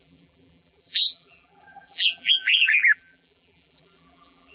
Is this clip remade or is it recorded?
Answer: remade